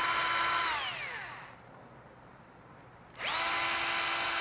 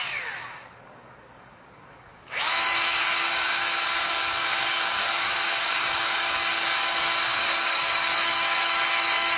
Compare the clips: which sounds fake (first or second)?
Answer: second